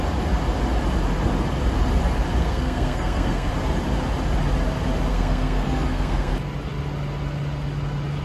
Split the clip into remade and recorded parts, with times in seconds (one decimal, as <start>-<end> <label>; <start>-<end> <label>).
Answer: 0.0-2.4 recorded; 2.4-3.5 remade; 3.5-5.1 recorded; 5.1-6.3 remade; 6.3-8.2 recorded